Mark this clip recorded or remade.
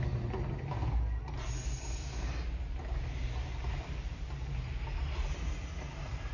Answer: recorded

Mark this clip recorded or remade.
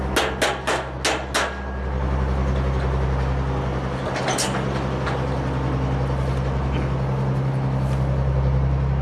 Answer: recorded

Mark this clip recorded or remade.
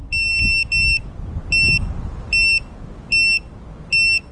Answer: recorded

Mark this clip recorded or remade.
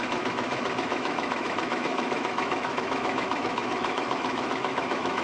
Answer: remade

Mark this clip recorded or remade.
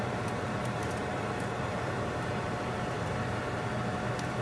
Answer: remade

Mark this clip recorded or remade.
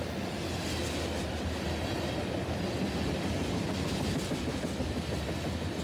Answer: recorded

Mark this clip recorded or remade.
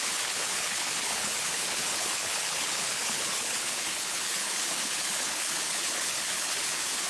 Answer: remade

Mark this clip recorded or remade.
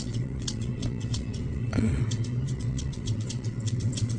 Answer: remade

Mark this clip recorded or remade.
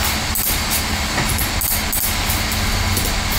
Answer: recorded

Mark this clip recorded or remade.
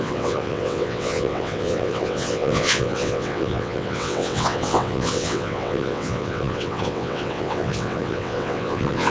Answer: remade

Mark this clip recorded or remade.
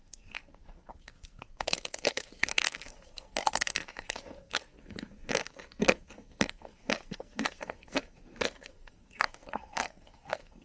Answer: remade